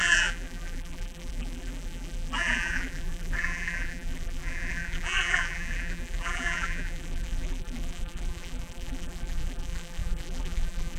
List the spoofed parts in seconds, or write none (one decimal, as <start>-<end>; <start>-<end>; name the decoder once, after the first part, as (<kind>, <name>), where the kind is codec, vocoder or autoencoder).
0.0-11.0 (vocoder, BigVGAN v2)